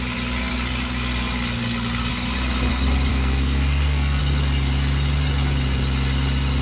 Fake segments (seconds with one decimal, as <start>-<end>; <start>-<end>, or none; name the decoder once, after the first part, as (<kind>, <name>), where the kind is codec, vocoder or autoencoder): 3.1-4.2 (codec, SNAC)